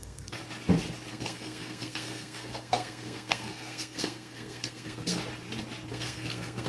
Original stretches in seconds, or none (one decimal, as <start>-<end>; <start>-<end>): 0.4-1.1; 5.2-5.9